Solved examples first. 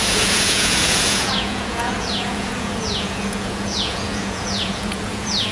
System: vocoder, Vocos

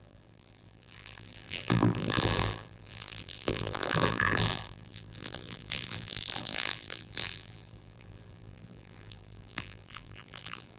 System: vocoder, BigVGAN v2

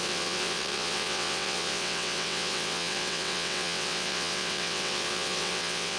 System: vocoder, WaveNeXt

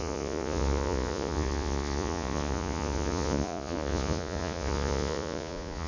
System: vocoder, Vocos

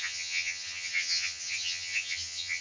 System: vocoder, HiFi-GAN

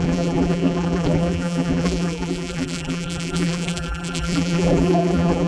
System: vocoder, BigVGAN v2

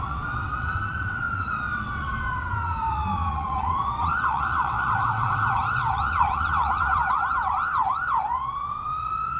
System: vocoder, WaveNeXt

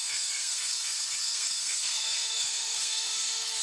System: codec, SNAC